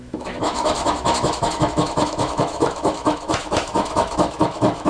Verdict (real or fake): fake